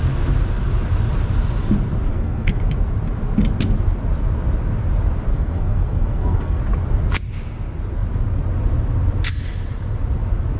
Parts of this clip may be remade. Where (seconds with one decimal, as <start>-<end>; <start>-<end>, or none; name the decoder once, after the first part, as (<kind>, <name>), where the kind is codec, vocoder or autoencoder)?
2.1-2.6 (codec, SNAC); 5.3-6.6